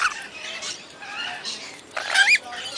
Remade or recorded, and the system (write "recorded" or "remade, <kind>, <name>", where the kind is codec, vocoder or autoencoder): recorded